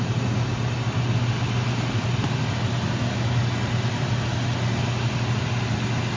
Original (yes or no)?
yes